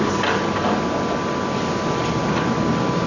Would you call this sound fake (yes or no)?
no